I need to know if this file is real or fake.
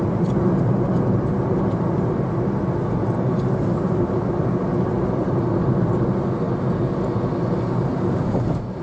real